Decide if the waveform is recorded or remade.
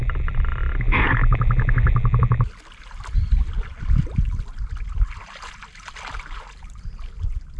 recorded